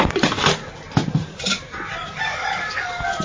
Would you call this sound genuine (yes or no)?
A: yes